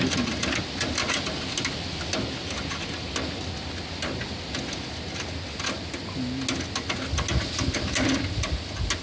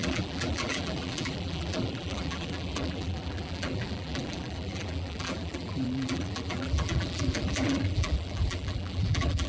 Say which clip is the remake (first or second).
second